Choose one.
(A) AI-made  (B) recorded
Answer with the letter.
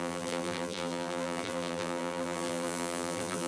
A